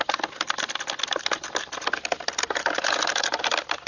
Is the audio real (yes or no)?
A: yes